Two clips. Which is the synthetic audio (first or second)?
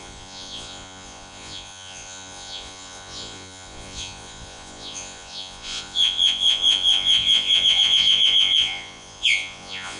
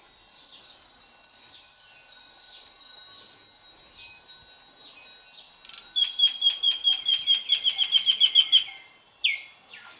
first